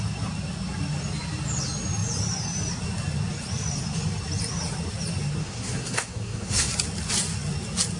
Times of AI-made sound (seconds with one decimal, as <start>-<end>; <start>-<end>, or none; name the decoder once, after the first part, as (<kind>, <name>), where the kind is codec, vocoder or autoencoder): 5.4-6.7 (codec, SNAC)